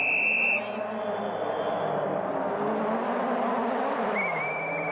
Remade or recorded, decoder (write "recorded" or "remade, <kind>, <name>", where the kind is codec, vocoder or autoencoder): recorded